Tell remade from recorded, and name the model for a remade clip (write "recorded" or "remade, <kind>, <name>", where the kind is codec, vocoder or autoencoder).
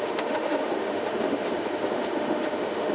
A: remade, autoencoder, DAC-VAE